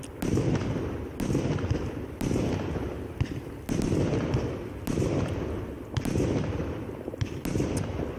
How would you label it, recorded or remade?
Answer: remade